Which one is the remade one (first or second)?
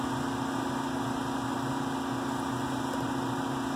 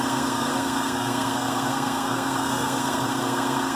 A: second